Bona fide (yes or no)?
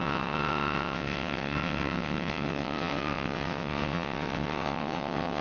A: no